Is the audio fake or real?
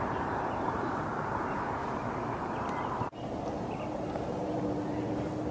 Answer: fake